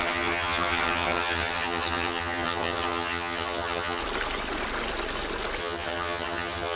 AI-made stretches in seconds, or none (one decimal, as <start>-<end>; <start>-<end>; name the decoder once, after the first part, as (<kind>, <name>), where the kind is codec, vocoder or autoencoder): 0.0-4.0 (vocoder, HiFi-GAN); 5.6-6.8